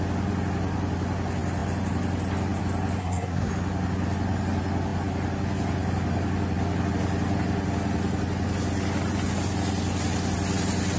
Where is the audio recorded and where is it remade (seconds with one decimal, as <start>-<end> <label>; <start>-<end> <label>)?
0.0-3.0 recorded; 3.0-3.5 remade; 3.5-11.0 recorded